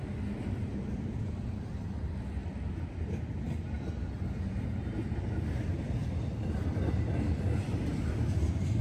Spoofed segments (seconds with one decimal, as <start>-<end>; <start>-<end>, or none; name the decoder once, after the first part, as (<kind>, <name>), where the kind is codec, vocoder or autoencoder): 0.6-1.7 (vocoder, BigVGAN v2)